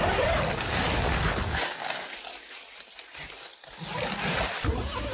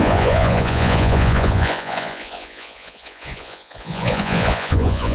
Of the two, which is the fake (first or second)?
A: second